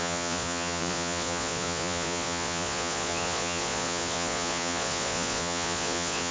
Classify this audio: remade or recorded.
remade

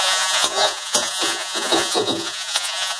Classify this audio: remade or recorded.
remade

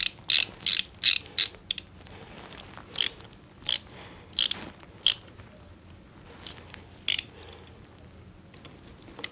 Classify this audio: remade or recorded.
recorded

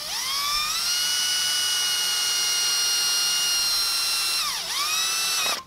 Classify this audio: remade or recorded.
recorded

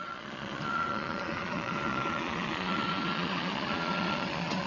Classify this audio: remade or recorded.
remade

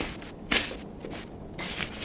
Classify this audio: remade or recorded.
recorded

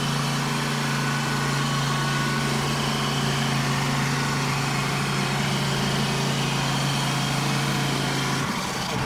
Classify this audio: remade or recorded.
recorded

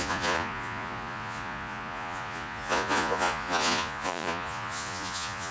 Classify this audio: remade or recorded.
remade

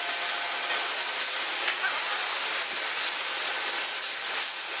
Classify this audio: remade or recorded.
recorded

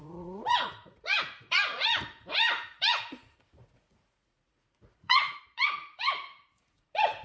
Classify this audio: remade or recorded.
remade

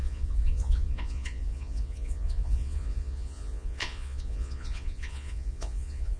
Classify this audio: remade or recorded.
remade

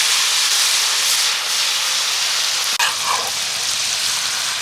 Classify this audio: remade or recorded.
recorded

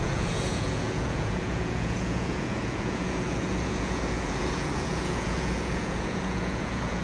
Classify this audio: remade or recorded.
remade